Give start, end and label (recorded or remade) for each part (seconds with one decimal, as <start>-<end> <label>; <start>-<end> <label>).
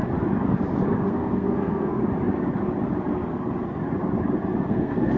0.0-1.1 recorded; 1.1-2.0 remade; 2.0-4.7 recorded; 4.7-5.2 remade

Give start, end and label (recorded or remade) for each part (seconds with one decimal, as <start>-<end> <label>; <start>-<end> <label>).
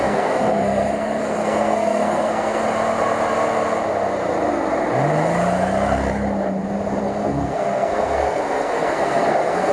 0.0-2.6 remade; 2.6-7.0 recorded; 7.0-9.7 remade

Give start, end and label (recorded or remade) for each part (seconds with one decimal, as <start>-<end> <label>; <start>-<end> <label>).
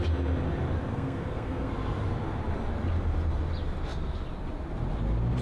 0.0-0.9 recorded; 0.9-1.7 remade; 1.7-5.4 recorded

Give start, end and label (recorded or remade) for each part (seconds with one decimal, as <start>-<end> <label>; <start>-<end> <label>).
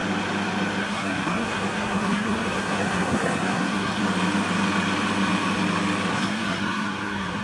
0.0-0.8 recorded; 0.8-4.0 remade; 4.0-6.1 recorded; 6.1-7.4 remade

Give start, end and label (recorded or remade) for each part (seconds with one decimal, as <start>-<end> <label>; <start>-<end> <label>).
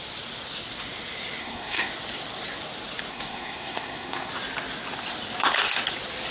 0.0-1.4 recorded; 1.4-1.9 remade; 1.9-3.1 recorded; 3.1-4.3 remade; 4.3-6.3 recorded